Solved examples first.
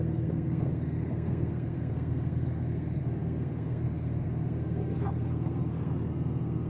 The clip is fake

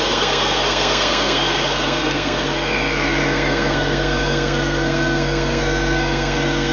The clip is fake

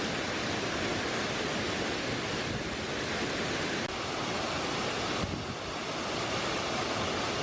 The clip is real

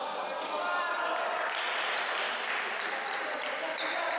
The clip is real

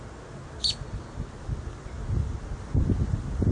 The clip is real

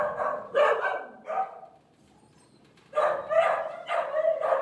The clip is real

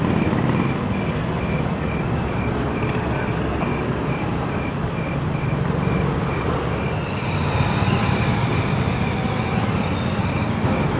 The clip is real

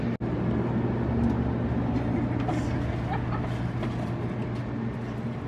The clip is real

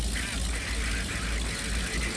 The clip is real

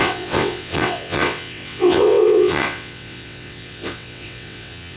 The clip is fake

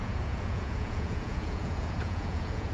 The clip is fake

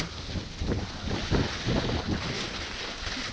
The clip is real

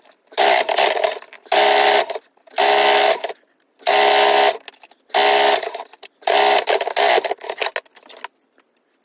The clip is real